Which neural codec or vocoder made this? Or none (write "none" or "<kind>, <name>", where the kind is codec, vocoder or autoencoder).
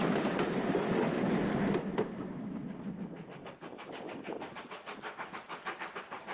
none